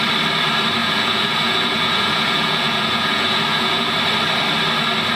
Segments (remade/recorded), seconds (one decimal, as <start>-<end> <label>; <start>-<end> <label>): 0.0-0.8 recorded; 0.8-3.9 remade; 3.9-5.2 recorded